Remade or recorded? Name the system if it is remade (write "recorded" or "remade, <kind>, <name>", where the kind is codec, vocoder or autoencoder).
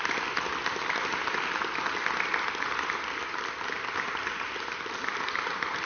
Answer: recorded